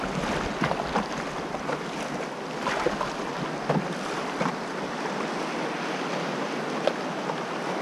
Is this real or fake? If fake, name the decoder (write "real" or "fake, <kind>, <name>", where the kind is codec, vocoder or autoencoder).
real